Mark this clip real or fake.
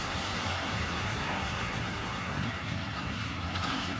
fake